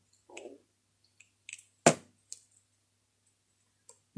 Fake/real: real